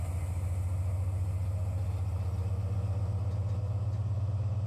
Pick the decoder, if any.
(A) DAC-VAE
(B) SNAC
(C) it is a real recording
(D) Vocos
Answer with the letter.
C